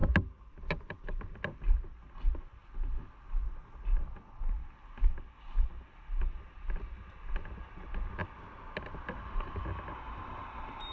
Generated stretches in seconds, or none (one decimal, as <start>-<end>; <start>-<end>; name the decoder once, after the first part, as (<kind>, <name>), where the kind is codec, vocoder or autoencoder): none